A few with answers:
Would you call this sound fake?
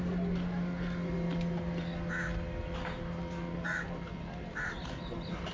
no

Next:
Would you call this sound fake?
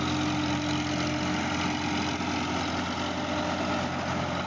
no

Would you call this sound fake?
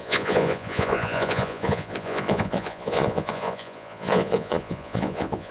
yes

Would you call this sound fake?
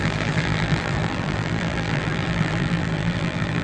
yes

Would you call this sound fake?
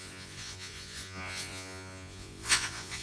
yes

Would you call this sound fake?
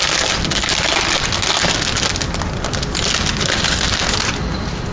no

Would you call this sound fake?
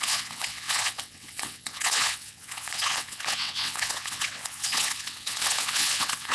yes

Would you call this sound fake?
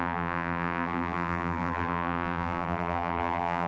yes